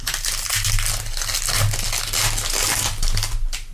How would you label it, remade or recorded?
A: recorded